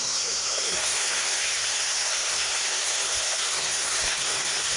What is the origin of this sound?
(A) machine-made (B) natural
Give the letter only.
A